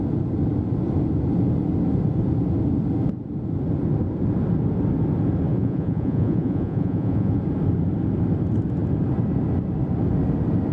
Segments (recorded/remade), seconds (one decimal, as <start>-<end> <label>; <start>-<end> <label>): 0.0-5.5 recorded; 5.5-7.4 remade; 7.4-10.7 recorded